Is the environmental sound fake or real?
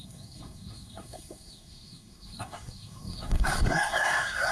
fake